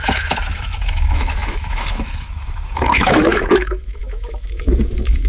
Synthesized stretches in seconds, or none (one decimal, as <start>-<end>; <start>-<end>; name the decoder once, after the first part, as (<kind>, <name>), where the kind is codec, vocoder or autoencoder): 0.0-5.3 (autoencoder, DAC-VAE)